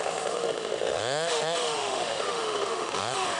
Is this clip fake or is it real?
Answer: fake